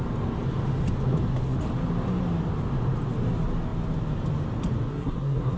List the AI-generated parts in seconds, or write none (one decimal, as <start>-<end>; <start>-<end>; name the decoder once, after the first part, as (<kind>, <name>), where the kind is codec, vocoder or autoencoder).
4.9-5.6 (codec, SNAC)